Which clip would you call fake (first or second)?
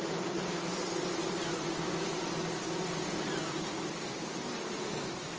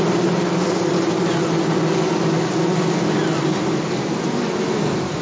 first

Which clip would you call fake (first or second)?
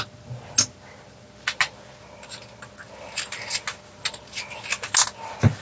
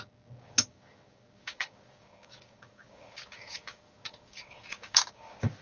second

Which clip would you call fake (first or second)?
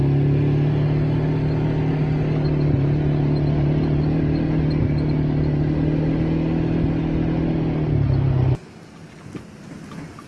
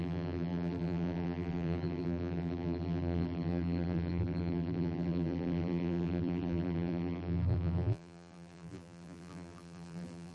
second